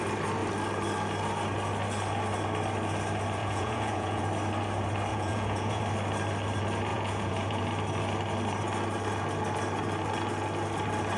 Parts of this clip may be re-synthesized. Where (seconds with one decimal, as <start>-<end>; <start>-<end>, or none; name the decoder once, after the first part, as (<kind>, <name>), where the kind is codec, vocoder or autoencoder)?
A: 3.4-4.2 (vocoder, Vocos); 5.1-5.8; 6.9-7.6